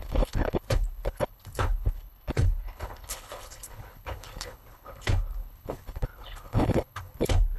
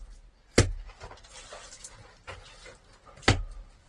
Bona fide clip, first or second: second